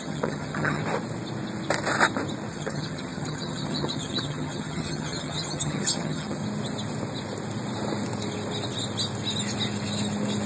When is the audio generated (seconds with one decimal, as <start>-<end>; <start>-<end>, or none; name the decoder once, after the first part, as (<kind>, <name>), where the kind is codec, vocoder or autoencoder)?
0.0-0.8 (vocoder, HiFi-GAN); 2.5-6.4